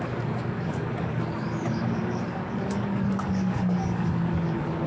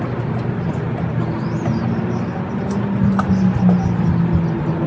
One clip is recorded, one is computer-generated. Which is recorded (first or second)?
second